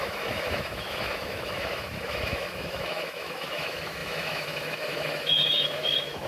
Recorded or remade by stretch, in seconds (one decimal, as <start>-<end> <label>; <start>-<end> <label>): 0.0-6.3 remade